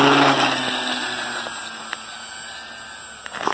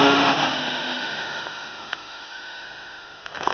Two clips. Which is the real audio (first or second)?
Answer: first